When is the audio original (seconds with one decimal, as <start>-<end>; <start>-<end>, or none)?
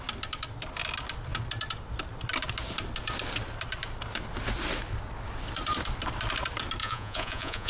0.0-6.8